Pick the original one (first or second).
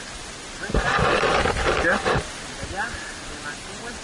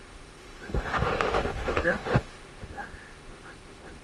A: first